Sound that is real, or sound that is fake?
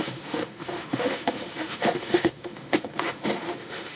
fake